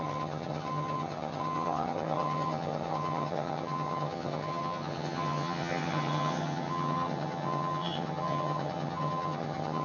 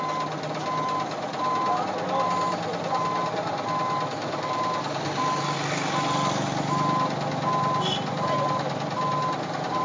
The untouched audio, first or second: second